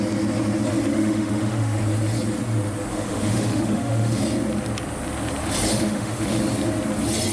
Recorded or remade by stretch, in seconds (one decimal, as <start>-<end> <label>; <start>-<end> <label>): 0.0-0.9 recorded; 0.9-1.8 remade; 1.8-2.9 recorded; 2.9-4.2 remade; 4.2-5.7 recorded; 5.7-6.4 remade; 6.4-7.3 recorded